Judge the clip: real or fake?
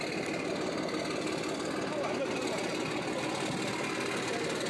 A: real